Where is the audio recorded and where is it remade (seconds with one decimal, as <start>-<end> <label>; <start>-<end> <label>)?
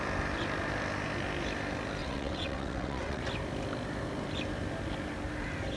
0.0-2.0 recorded; 2.0-3.2 remade; 3.2-5.8 recorded